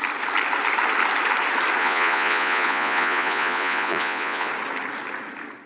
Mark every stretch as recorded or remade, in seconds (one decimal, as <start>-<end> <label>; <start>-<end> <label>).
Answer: 0.0-1.8 recorded; 1.8-4.5 remade; 4.5-5.7 recorded

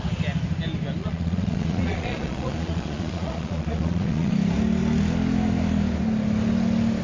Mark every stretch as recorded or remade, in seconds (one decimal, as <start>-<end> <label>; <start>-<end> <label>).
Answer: 0.0-1.0 recorded; 1.0-4.3 remade; 4.3-7.0 recorded

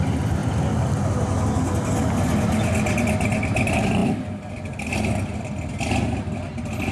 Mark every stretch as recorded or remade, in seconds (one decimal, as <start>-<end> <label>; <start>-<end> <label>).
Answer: 0.0-6.9 recorded

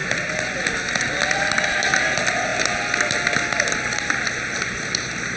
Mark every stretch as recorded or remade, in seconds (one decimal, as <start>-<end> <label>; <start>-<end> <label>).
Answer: 0.0-5.4 recorded